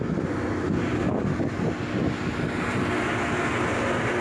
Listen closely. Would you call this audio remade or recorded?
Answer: recorded